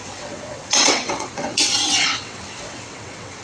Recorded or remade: remade